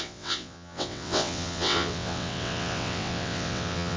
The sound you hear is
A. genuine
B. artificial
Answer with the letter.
B